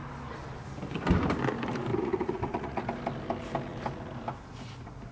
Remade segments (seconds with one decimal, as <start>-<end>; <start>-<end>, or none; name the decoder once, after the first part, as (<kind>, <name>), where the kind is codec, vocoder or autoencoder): 1.9-2.8 (vocoder, Vocos)